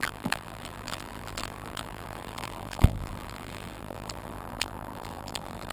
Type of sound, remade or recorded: remade